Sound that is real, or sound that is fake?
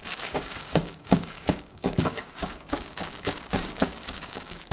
fake